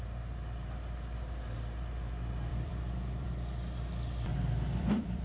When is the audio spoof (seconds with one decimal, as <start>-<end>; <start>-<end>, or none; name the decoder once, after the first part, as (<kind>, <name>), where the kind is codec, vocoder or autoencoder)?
2.5-3.3 (vocoder, BigVGAN v2); 4.3-5.2